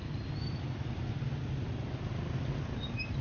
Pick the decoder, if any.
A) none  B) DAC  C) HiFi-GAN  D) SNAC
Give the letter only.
A